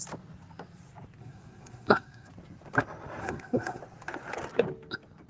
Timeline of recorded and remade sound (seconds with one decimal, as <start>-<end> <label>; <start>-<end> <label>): 0.0-1.2 recorded; 1.2-2.3 remade; 2.3-3.2 recorded; 3.2-3.8 remade; 3.8-5.3 recorded

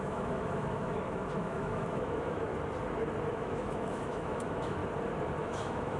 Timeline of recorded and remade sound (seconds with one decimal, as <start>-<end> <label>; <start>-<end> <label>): 0.0-2.5 remade; 2.5-3.3 recorded; 3.3-4.8 remade; 4.8-5.4 recorded; 5.4-6.0 remade

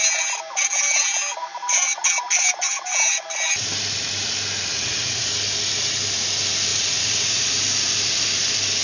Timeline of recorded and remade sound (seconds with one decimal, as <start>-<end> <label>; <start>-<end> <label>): 0.0-4.7 recorded; 4.7-5.3 remade; 5.3-6.7 recorded; 6.7-7.5 remade; 7.5-8.8 recorded

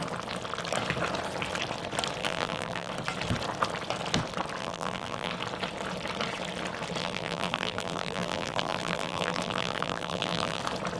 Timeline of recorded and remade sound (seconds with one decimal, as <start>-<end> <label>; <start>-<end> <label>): 0.0-2.2 recorded; 2.2-2.9 remade; 2.9-4.6 recorded; 4.6-5.3 remade; 5.3-7.0 recorded; 7.0-10.6 remade; 10.6-11.0 recorded

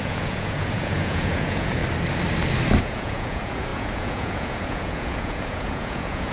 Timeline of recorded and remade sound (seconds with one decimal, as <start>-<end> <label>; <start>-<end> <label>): 0.0-1.8 remade; 1.8-2.8 recorded; 2.8-6.3 remade

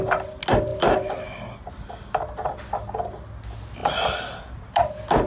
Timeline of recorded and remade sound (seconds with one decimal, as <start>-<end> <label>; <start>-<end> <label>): 0.0-0.7 recorded; 0.7-1.7 remade; 1.7-5.3 recorded

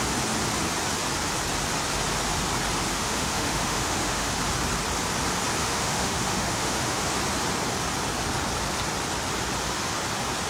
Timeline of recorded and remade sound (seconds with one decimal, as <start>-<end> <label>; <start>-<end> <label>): 0.0-2.9 recorded; 2.9-4.3 remade; 4.3-5.6 recorded; 5.6-7.0 remade; 7.0-10.5 recorded